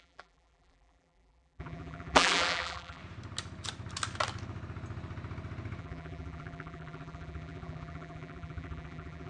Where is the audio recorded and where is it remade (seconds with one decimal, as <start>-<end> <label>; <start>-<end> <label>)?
0.0-3.0 remade; 3.0-5.8 recorded; 5.8-9.3 remade